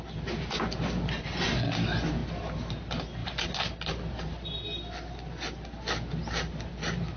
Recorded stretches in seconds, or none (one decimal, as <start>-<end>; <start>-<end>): 0.0-7.2